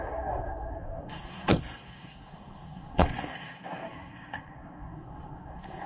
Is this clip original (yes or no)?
no